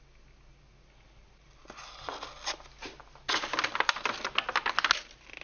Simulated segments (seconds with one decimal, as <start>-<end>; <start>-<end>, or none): none